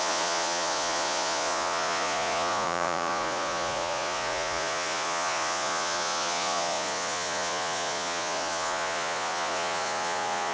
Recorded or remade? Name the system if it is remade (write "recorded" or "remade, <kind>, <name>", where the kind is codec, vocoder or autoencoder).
remade, vocoder, Vocos